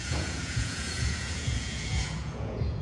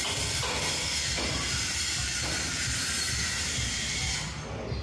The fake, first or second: first